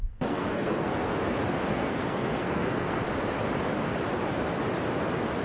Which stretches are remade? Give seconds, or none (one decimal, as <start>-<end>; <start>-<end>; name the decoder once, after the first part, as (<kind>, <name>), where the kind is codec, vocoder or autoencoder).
0.0-1.1 (codec, SNAC); 1.7-3.0